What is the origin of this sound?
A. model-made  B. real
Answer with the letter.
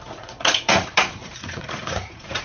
A